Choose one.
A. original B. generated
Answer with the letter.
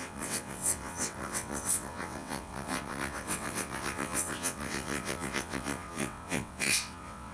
B